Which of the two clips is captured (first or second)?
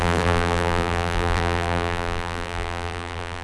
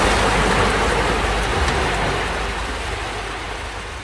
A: second